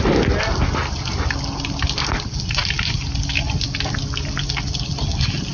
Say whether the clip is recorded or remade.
recorded